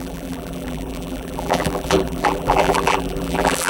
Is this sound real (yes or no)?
no